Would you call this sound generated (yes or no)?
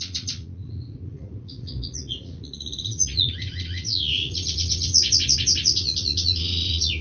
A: yes